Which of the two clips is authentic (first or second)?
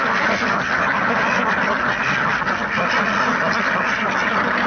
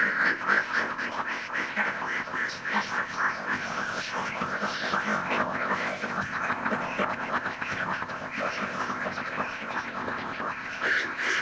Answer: first